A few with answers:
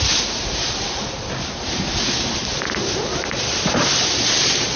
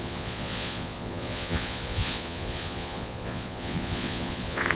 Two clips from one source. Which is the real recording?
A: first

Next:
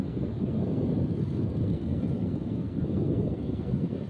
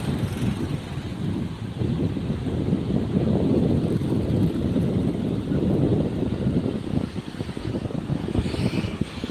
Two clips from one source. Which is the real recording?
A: second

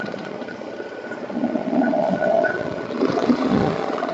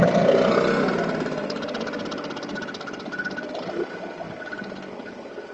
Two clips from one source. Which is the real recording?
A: second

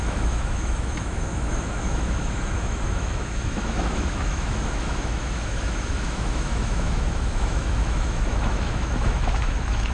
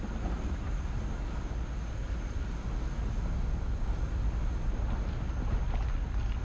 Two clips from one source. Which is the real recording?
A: second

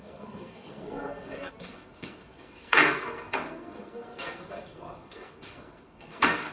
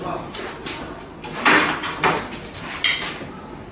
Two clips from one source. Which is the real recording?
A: second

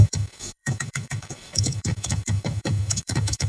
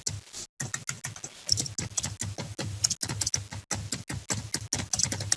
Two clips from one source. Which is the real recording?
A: second